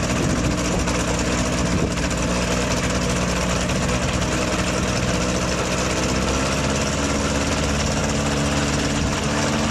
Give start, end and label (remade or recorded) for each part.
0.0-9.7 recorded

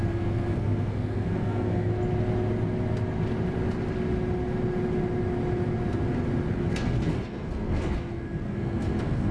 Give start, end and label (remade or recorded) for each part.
0.0-1.9 remade; 1.9-6.5 recorded; 6.5-9.3 remade

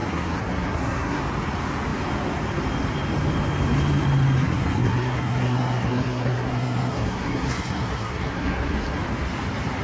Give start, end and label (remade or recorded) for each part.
0.0-1.2 remade; 1.2-4.4 recorded; 4.4-9.0 remade; 9.0-9.8 recorded

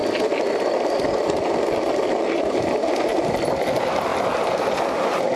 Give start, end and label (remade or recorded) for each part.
0.0-5.4 recorded